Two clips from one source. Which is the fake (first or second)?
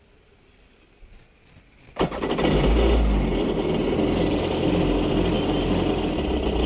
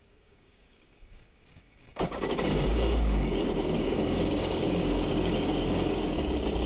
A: second